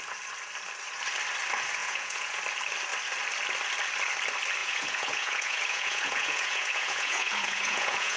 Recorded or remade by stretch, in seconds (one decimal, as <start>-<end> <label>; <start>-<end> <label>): 0.0-1.8 recorded; 1.8-2.4 remade; 2.4-4.6 recorded; 4.6-8.2 remade